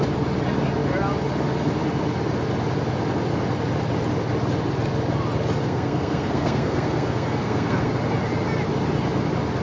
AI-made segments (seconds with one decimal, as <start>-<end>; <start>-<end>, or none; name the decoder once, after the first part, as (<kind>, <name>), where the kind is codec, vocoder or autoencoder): 5.6-7.9 (codec, SNAC)